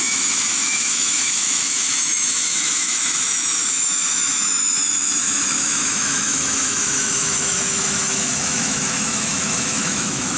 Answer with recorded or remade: remade